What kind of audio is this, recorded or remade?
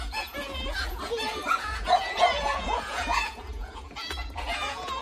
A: remade